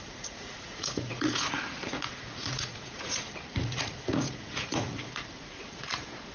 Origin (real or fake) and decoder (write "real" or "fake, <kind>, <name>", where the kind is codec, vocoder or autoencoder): fake, vocoder, Vocos